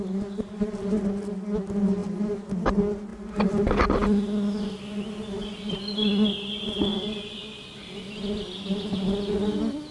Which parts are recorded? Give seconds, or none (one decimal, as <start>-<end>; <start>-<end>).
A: 0.0-9.9

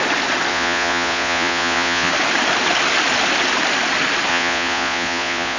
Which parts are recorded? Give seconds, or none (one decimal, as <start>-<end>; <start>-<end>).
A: 0.0-0.5; 2.1-4.3

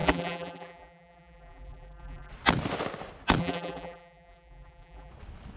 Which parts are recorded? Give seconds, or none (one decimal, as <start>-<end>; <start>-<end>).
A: 2.3-3.4; 5.1-5.6

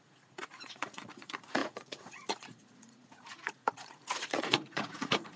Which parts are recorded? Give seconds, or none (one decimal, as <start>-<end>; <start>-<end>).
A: none

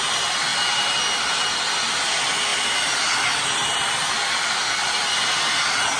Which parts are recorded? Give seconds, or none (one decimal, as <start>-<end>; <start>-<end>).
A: 0.0-6.0

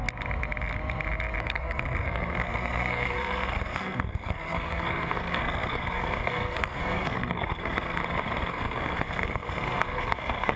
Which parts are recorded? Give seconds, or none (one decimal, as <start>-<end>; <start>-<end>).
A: 0.0-1.4; 8.0-8.5